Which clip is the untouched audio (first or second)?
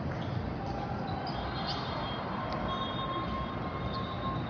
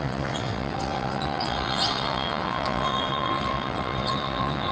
first